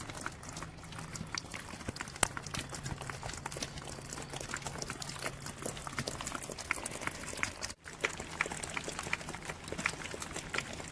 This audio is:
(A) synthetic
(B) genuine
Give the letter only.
B